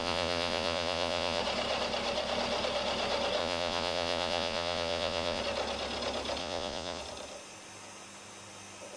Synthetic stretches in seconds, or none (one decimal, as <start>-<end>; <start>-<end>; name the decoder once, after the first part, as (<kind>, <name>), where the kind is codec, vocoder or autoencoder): 0.0-1.4 (vocoder, Vocos); 3.4-5.4; 6.4-7.0